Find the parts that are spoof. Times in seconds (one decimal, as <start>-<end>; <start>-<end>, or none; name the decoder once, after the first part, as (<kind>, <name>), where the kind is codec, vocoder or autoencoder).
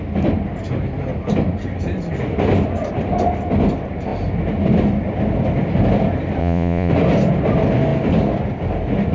6.4-6.9 (vocoder, Vocos)